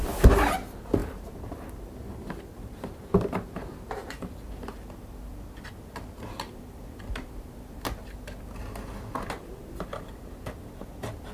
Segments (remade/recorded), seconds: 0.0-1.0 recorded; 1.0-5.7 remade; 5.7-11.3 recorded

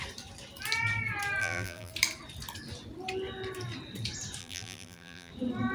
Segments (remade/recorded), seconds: 0.0-1.4 recorded; 1.4-1.9 remade; 1.9-4.4 recorded; 4.4-5.3 remade; 5.3-5.7 recorded